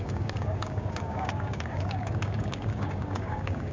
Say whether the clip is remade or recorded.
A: remade